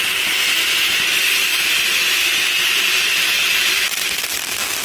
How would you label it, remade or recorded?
remade